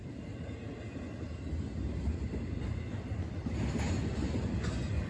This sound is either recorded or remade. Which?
recorded